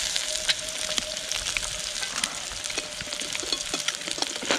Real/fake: real